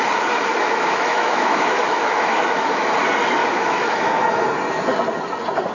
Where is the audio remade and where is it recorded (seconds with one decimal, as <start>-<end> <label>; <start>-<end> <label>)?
0.0-0.5 recorded; 0.5-2.8 remade; 2.8-3.4 recorded; 3.4-4.1 remade; 4.1-5.7 recorded